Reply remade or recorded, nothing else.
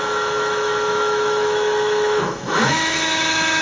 remade